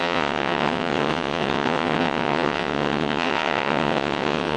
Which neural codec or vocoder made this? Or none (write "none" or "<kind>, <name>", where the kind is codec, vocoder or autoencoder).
vocoder, WaveNeXt